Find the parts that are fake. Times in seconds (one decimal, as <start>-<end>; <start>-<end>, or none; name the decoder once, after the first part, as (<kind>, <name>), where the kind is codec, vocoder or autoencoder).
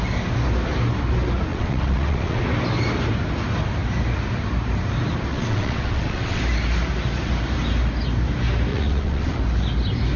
1.5-2.4 (vocoder, WaveNeXt); 5.3-6.4; 8.7-9.4